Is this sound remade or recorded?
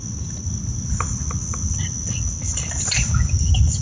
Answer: recorded